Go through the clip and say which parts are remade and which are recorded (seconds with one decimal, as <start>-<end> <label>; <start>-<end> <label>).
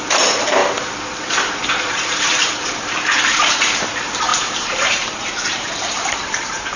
0.0-0.6 remade; 0.6-1.7 recorded; 1.7-6.8 remade